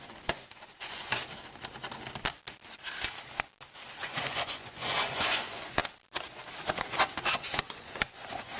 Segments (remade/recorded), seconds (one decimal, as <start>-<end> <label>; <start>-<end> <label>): 0.0-1.2 remade; 1.2-4.0 recorded; 4.0-5.8 remade; 5.8-6.8 recorded; 6.8-8.6 remade